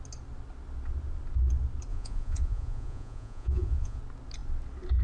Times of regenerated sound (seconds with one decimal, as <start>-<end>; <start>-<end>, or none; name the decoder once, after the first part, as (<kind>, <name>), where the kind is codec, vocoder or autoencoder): 1.9-4.0 (vocoder, Vocos)